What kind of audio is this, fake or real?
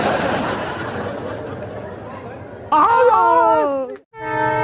real